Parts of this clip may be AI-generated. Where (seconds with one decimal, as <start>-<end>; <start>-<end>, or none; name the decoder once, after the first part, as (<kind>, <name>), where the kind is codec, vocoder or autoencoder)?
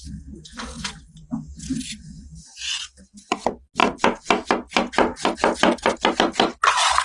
none